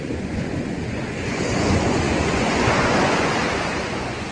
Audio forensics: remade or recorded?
remade